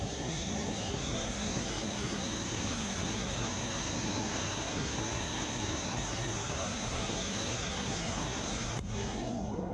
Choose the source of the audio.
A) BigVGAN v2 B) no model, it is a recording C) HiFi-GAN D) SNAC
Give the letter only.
D